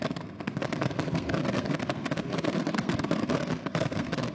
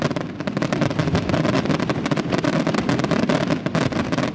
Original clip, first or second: second